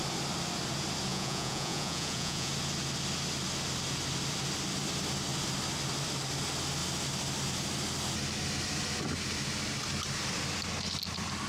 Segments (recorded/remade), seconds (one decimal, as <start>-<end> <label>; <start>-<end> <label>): 0.0-1.1 recorded; 1.1-2.5 remade; 2.5-11.5 recorded